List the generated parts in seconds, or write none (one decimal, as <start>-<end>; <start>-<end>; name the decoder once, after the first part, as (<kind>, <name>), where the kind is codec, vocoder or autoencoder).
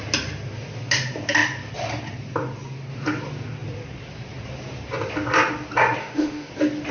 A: 6.0-6.5 (autoencoder, DAC-VAE)